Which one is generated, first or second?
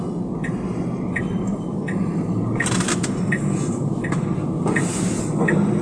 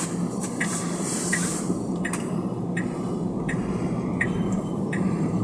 second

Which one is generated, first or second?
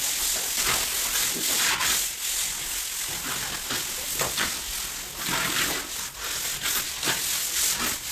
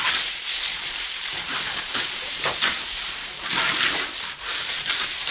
second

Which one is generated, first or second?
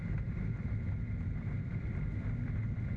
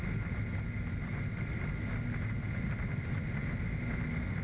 first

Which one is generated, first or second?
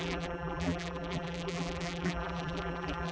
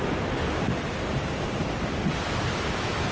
first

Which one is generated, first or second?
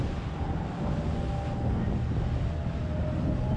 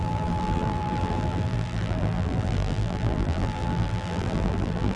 second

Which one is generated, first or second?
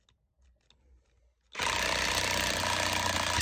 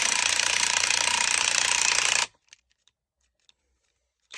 second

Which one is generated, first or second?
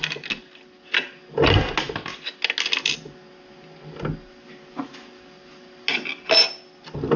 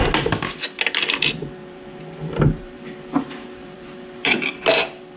second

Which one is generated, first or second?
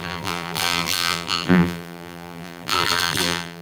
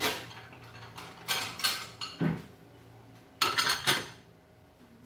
first